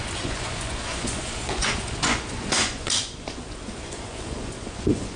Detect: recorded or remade remade